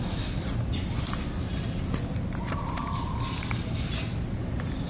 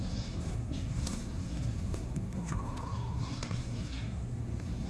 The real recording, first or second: first